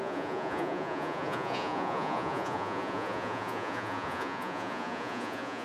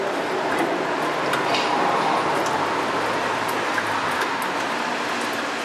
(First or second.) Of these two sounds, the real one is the second